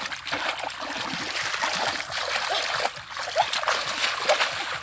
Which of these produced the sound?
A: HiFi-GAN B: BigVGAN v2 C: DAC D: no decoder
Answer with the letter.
D